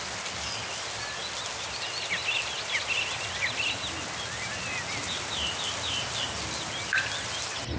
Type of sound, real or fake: real